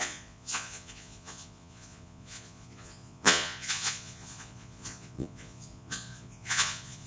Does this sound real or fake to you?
fake